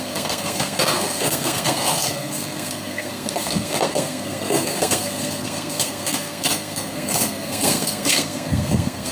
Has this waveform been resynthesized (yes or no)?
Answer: yes